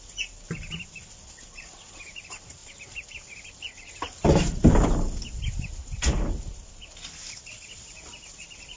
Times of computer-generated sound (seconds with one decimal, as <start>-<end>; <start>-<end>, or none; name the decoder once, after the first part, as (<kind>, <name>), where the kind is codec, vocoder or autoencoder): none